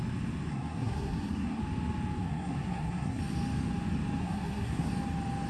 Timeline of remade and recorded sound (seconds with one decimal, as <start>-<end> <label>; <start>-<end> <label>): 0.0-0.5 recorded; 0.5-1.6 remade; 1.6-2.2 recorded; 2.2-3.2 remade; 3.2-4.2 recorded; 4.2-4.9 remade; 4.9-5.5 recorded